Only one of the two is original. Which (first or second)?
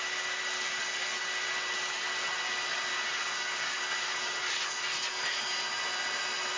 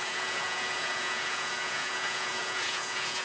first